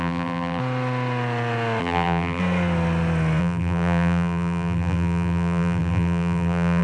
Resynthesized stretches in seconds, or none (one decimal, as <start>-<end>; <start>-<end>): 0.0-0.6; 1.8-2.4; 3.4-6.8